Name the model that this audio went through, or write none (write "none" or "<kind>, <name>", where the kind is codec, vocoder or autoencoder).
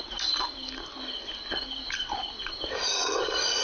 none